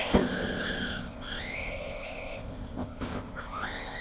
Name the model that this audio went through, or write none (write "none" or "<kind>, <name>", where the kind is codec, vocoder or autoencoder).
codec, ZipCodec